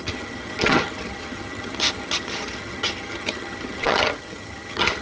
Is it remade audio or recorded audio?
remade